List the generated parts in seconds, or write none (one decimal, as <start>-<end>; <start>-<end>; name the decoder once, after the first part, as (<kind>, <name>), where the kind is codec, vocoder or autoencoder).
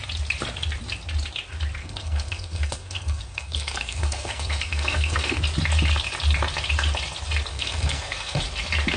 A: 1.8-5.4 (codec, SNAC); 7.5-8.4